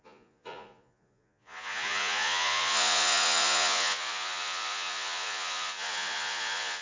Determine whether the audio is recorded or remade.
remade